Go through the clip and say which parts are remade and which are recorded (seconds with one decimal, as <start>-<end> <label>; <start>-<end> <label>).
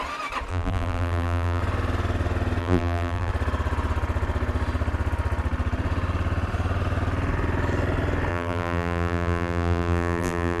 0.0-0.5 recorded; 0.5-1.6 remade; 1.6-2.6 recorded; 2.6-3.3 remade; 3.3-8.3 recorded; 8.3-10.6 remade